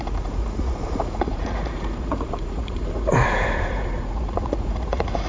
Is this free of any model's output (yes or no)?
no